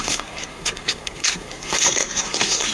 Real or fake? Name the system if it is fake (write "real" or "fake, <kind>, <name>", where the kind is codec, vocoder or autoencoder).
fake, codec, SNAC